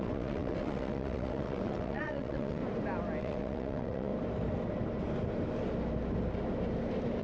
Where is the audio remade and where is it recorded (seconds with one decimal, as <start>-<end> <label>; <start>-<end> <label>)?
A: 0.0-2.6 remade; 2.6-3.2 recorded; 3.2-4.1 remade; 4.1-7.2 recorded